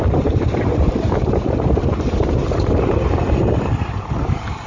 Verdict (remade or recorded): remade